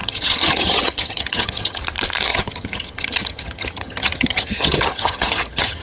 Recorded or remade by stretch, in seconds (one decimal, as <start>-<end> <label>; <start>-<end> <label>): 0.0-1.8 remade; 1.8-2.3 recorded; 2.3-5.8 remade